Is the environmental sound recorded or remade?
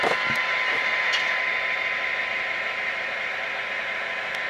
recorded